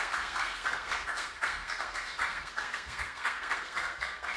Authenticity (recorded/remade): remade